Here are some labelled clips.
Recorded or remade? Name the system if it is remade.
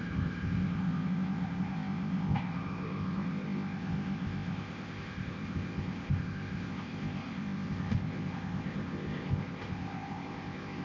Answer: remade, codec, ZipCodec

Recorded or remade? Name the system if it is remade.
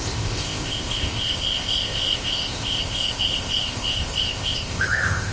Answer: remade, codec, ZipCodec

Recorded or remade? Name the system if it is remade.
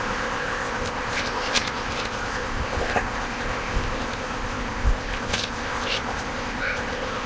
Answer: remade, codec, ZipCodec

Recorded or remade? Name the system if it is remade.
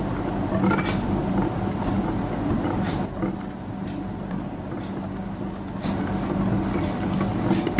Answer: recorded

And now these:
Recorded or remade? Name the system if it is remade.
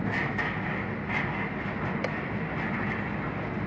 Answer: recorded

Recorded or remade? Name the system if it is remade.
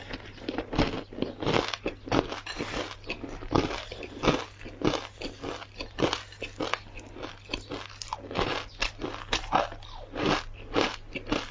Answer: recorded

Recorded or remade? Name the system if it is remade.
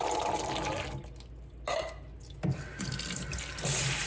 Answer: recorded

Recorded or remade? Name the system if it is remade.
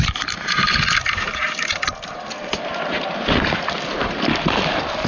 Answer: recorded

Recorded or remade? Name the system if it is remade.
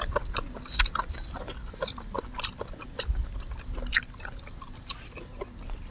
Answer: recorded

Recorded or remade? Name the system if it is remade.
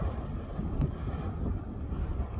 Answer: recorded